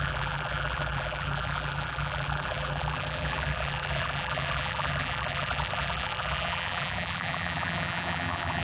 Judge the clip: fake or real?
fake